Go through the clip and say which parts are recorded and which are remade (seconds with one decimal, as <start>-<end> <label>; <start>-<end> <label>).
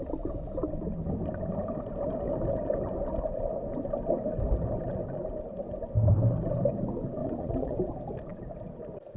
0.0-7.2 recorded; 7.2-7.8 remade; 7.8-9.2 recorded